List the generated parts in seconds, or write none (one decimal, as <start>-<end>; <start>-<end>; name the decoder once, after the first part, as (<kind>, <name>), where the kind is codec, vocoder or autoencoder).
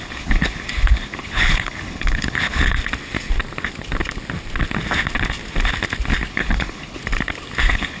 0.0-2.8 (codec, HILCodec); 6.3-7.0; 7.6-8.0